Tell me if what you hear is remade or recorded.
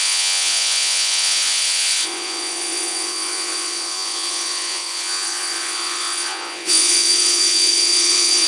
remade